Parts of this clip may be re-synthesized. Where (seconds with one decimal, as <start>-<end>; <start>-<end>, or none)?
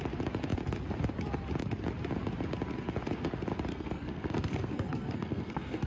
3.7-5.9